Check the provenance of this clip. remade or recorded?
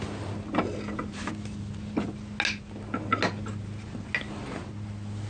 recorded